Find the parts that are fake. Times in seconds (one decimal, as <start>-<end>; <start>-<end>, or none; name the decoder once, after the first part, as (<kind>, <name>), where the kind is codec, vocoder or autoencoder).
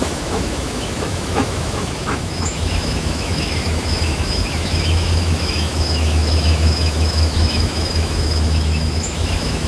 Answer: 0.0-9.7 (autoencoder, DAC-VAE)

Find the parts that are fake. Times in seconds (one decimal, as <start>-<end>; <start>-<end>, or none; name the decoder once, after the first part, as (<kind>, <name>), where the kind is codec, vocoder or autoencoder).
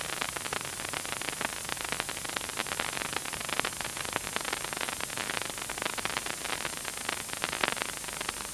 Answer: none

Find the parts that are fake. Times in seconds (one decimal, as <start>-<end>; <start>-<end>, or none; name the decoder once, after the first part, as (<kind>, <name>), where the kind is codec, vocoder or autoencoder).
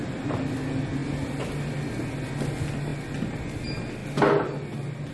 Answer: none